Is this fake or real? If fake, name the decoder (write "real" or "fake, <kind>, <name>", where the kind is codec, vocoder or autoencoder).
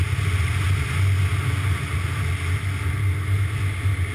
real